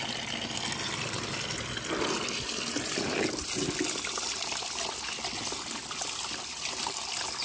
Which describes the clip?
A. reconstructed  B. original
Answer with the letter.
B